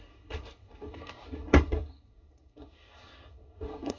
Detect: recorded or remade remade